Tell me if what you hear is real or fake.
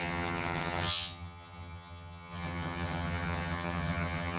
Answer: fake